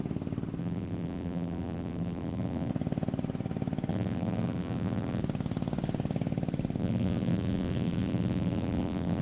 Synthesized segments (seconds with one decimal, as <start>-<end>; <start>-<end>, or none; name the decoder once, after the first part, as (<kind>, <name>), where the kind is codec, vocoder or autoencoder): 0.6-2.7 (vocoder, BigVGAN v2); 3.9-5.2; 6.8-9.2